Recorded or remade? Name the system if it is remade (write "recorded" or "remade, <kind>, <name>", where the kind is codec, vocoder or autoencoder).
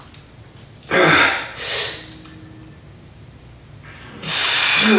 recorded